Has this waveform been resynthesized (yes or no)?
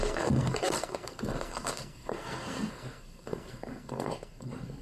yes